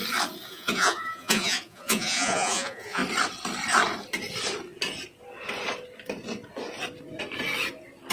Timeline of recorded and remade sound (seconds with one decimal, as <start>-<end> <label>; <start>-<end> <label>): 0.0-0.5 recorded; 0.5-3.0 remade; 3.0-8.1 recorded